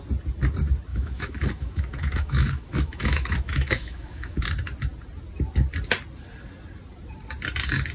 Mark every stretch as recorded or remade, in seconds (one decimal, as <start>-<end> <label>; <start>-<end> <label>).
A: 0.0-0.9 recorded; 0.9-4.4 remade; 4.4-7.9 recorded